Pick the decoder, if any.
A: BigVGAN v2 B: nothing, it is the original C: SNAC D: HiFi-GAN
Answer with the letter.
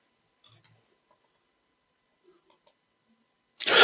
B